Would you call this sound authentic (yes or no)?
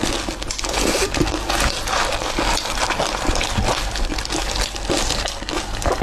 yes